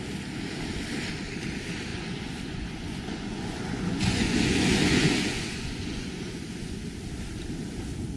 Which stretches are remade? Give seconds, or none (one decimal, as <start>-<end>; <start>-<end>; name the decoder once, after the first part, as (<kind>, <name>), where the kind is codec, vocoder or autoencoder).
1.9-6.8 (vocoder, Vocos)